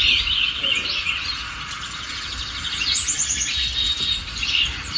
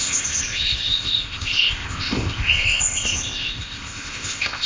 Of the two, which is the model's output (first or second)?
second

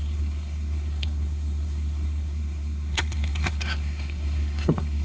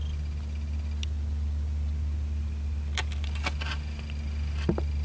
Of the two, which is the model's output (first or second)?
first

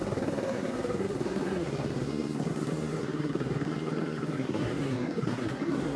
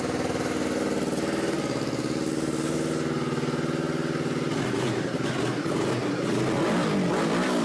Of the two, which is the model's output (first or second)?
first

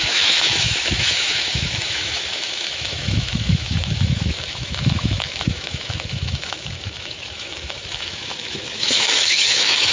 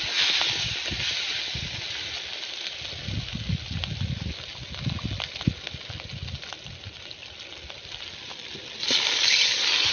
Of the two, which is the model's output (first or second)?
first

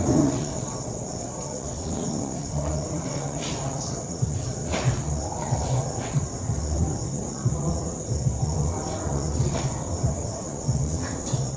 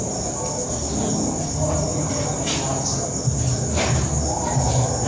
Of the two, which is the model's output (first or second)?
first